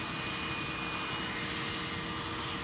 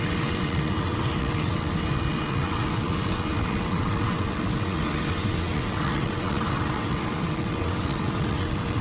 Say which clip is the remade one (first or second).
second